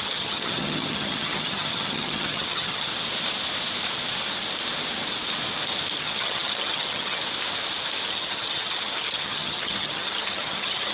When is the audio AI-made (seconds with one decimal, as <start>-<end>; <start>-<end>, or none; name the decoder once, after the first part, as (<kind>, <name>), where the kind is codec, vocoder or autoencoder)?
0.0-2.9 (vocoder, HiFi-GAN); 6.0-7.2; 8.1-10.9